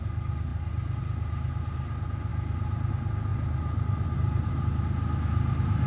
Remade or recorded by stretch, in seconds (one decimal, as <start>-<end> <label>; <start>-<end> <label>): 0.0-5.9 recorded